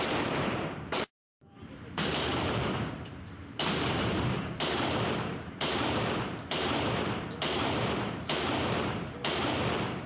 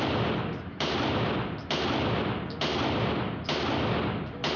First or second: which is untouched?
second